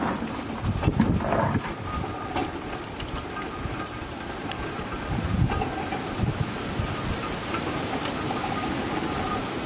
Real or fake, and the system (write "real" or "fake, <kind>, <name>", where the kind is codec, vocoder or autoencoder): real